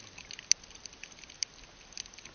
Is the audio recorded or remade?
recorded